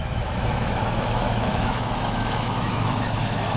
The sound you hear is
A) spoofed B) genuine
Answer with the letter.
A